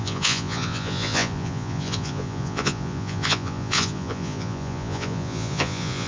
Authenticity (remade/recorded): remade